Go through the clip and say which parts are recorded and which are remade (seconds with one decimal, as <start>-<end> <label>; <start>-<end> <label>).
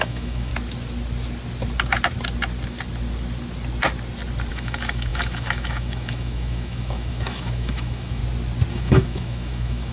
0.0-0.5 remade; 0.5-4.5 recorded; 4.5-8.2 remade; 8.2-8.7 recorded; 8.7-9.9 remade